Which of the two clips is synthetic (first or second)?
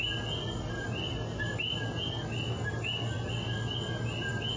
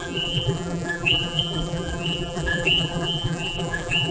second